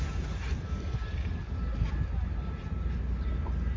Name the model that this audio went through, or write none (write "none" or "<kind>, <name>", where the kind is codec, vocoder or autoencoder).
none